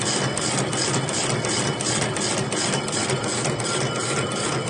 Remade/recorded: recorded